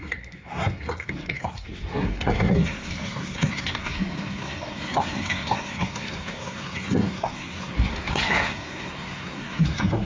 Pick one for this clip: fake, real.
fake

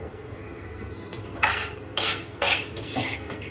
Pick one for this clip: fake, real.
fake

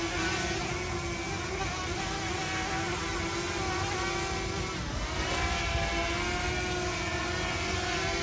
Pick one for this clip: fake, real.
real